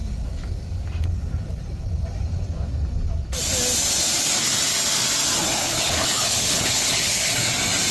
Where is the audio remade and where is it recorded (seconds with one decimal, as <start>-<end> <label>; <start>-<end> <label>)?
0.0-5.6 recorded; 5.6-7.3 remade; 7.3-7.9 recorded

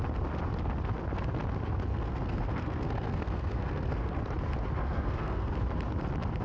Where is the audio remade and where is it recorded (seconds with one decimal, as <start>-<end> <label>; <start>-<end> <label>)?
0.0-1.9 recorded; 1.9-4.2 remade; 4.2-4.8 recorded; 4.8-5.5 remade; 5.5-6.4 recorded

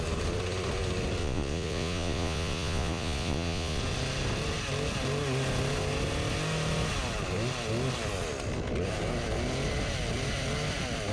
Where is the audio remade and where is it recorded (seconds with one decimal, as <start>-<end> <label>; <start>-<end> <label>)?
0.0-1.2 recorded; 1.2-3.8 remade; 3.8-11.1 recorded

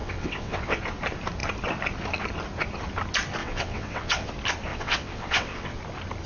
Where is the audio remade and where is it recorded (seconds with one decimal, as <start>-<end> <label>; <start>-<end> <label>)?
0.0-0.8 remade; 0.8-3.4 recorded; 3.4-4.3 remade; 4.3-4.7 recorded; 4.7-5.8 remade; 5.8-6.3 recorded

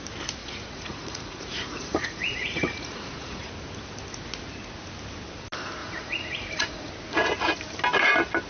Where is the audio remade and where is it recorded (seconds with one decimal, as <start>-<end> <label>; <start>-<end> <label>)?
0.0-0.4 recorded; 0.4-3.5 remade; 3.5-5.8 recorded; 5.8-6.9 remade; 6.9-8.5 recorded

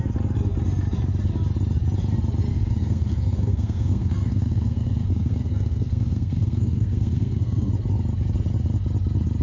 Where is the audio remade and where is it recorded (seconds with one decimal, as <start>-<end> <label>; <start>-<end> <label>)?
0.0-2.5 recorded; 2.5-7.7 remade; 7.7-9.4 recorded

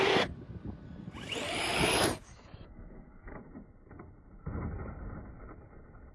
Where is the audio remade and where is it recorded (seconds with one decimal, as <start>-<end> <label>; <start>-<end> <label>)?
0.0-2.2 recorded; 2.2-3.4 remade; 3.4-6.1 recorded